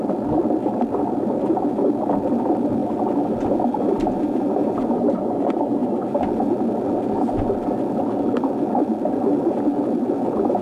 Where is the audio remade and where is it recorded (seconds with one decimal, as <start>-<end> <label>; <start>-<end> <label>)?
0.0-10.6 recorded